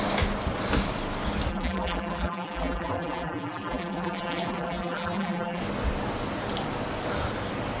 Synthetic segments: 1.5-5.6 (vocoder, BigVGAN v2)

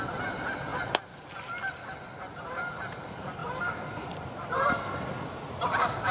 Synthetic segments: 0.0-6.1 (vocoder, BigVGAN v2)